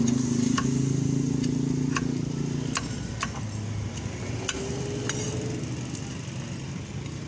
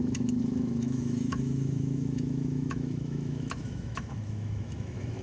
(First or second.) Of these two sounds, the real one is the first